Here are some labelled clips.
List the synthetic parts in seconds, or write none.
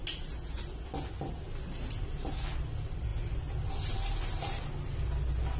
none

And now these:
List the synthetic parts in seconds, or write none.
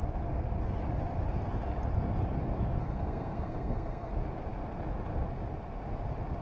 2.8-4.1 (codec, SNAC)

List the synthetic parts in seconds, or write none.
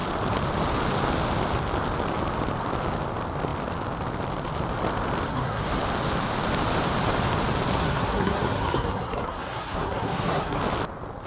5.3-5.8 (codec, SNAC); 7.8-10.6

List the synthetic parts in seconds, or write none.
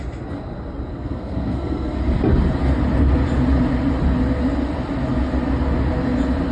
0.9-2.0 (codec, SNAC)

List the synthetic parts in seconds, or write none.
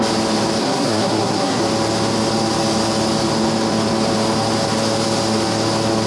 0.6-1.6 (codec, SNAC)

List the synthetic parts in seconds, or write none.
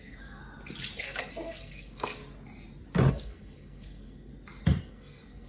0.0-0.4 (codec, SNAC); 1.0-2.2; 3.1-4.3; 4.8-5.5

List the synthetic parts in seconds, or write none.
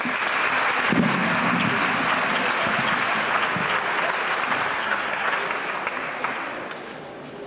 4.8-5.3 (codec, SNAC)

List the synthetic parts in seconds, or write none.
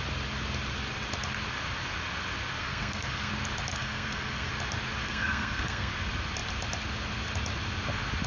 2.6-3.3 (codec, SNAC); 3.7-4.5; 5.0-5.9